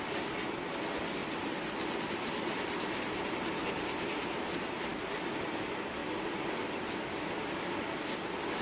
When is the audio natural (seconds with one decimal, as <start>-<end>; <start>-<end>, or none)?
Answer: 0.0-1.2; 2.0-8.6